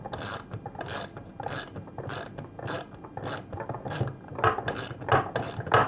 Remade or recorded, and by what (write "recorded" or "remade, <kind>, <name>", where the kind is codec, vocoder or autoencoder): recorded